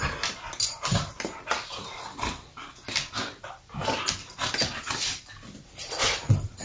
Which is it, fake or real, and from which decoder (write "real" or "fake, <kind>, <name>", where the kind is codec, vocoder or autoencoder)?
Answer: real